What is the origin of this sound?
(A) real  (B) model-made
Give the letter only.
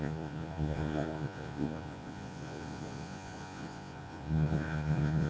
B